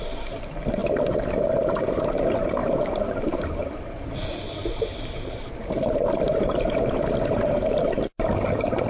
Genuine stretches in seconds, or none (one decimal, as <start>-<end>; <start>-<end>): 0.8-1.5

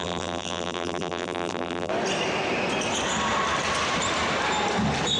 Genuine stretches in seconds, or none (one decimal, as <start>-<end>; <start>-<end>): 1.9-5.2